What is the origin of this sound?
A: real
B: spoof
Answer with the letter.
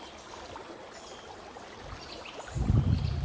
A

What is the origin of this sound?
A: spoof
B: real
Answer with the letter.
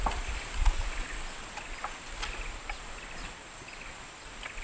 B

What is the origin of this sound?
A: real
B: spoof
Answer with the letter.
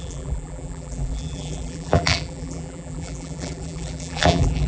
B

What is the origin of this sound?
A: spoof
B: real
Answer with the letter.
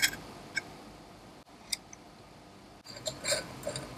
B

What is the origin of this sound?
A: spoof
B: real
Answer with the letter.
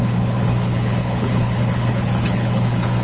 A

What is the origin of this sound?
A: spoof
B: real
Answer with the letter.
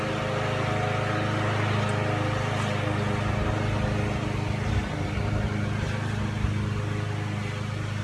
B